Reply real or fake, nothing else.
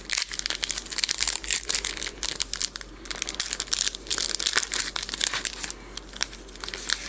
real